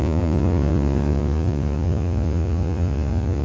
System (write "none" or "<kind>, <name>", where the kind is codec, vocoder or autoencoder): vocoder, Vocos